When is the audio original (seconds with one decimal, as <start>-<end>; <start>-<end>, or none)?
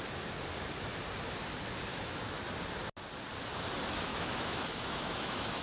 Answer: 0.0-1.9; 2.4-4.1